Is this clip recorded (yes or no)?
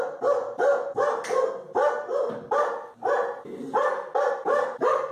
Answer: yes